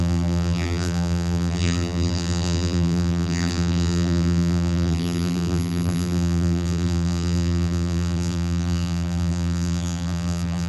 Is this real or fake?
fake